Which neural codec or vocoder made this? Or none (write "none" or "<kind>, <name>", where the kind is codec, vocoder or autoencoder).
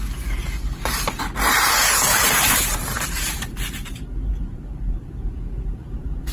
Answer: vocoder, BigVGAN v2